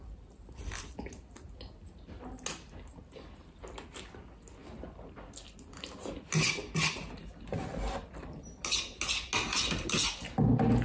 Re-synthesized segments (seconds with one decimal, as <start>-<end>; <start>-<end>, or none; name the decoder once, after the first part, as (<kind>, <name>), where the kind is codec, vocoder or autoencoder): none

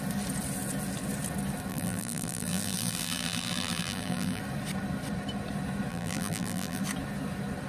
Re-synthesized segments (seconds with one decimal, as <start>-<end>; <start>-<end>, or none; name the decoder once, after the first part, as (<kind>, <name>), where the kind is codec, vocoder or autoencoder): 1.7-4.4 (vocoder, BigVGAN v2); 5.9-6.8

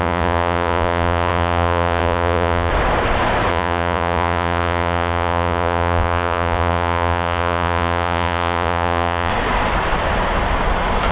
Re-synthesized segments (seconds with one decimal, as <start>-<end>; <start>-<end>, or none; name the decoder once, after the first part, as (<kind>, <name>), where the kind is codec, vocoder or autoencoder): 0.0-2.7 (vocoder, Vocos); 3.5-9.3

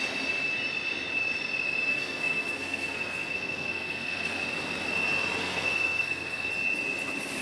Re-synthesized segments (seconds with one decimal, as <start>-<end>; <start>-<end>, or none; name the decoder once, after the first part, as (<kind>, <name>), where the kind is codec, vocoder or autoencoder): 1.9-4.4 (codec, SNAC); 5.4-6.5

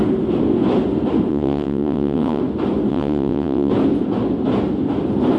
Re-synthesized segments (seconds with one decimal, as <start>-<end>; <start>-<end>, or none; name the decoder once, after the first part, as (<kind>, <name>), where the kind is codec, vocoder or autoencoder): 1.3-2.4 (vocoder, WaveNeXt); 2.9-3.7